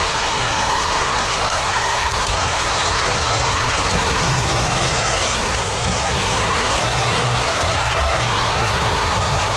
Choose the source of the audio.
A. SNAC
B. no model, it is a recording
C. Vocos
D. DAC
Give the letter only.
A